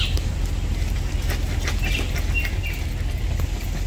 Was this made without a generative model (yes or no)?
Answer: yes